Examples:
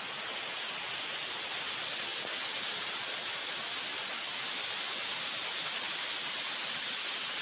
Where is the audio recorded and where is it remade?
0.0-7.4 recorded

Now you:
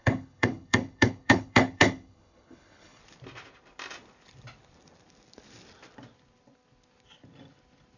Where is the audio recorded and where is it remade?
0.0-3.0 remade; 3.0-8.0 recorded